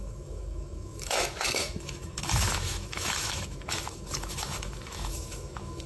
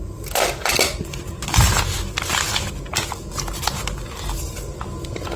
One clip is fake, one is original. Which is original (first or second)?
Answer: second